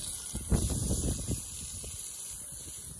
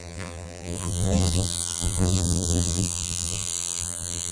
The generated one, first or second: second